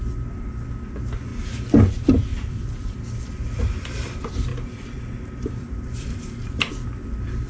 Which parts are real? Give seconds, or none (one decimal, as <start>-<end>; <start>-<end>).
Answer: 0.0-2.3; 3.6-4.5; 6.7-7.5